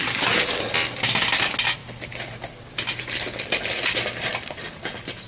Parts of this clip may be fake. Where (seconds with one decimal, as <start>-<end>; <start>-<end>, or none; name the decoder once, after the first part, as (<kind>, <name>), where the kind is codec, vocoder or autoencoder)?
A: none

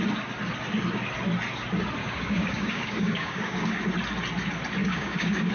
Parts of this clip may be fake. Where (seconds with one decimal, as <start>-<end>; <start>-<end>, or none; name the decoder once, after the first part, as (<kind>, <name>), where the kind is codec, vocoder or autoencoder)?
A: 2.0-3.8 (codec, DAC); 4.8-5.5